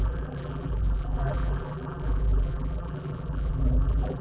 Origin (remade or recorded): remade